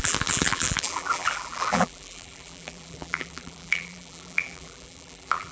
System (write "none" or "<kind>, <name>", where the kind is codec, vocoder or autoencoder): vocoder, BigVGAN v2